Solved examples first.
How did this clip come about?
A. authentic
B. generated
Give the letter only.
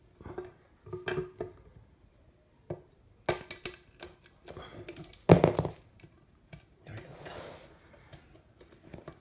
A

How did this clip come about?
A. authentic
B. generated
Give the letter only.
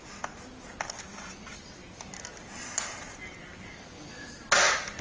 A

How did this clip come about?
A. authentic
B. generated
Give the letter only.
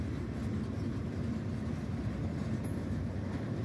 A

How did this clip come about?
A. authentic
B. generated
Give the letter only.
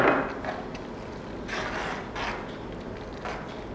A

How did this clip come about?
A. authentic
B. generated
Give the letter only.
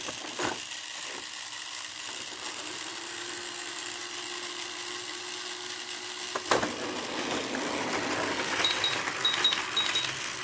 A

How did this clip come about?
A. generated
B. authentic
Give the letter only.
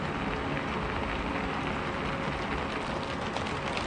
B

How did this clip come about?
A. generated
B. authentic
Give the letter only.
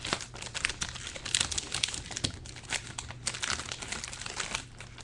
B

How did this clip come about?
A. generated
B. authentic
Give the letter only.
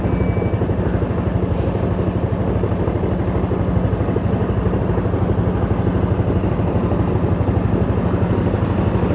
B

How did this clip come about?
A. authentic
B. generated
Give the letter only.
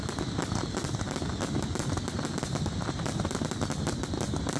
A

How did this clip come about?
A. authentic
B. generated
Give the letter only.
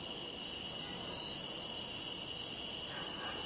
A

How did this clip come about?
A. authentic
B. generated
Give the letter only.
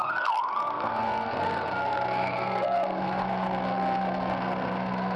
B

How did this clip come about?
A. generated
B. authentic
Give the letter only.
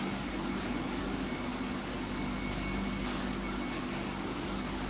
A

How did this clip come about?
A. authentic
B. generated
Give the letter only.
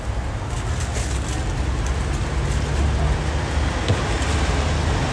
A